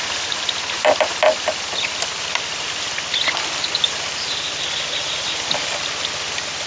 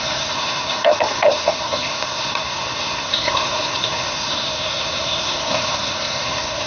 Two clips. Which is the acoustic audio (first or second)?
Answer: first